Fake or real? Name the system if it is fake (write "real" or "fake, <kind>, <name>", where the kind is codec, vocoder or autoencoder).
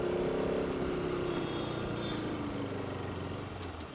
real